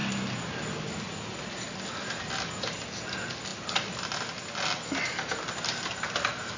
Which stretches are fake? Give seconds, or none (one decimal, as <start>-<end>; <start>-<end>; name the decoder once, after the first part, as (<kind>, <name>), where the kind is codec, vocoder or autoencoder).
none

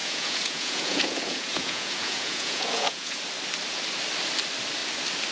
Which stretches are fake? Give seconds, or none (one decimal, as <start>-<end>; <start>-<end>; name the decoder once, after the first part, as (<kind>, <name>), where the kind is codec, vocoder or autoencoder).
0.0-3.2 (vocoder, Vocos)

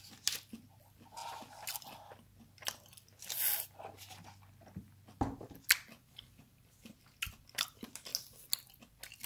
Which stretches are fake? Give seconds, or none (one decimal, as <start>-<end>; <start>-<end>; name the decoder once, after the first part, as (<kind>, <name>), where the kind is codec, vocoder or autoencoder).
none